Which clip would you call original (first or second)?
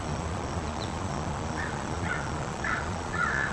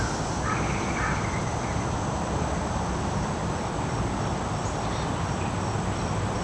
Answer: second